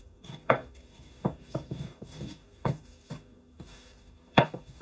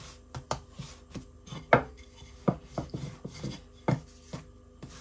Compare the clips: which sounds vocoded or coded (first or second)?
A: first